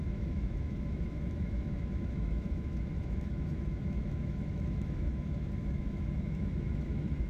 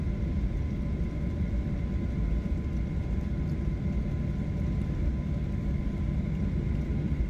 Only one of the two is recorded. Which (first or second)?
second